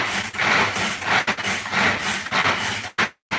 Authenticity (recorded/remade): recorded